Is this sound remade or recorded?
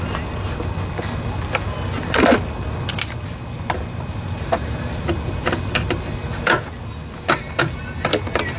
recorded